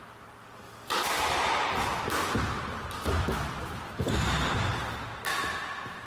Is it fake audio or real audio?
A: real